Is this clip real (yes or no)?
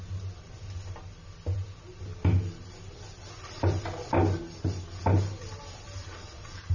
yes